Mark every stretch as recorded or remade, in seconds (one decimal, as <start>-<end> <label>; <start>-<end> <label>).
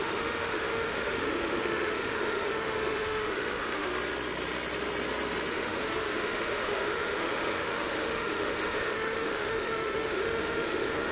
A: 0.0-3.9 remade; 3.9-5.5 recorded; 5.5-11.1 remade